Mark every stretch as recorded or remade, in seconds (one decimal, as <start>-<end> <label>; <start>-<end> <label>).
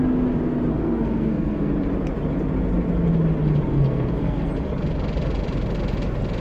0.0-0.7 recorded; 0.7-1.7 remade; 1.7-3.7 recorded; 3.7-4.5 remade; 4.5-6.4 recorded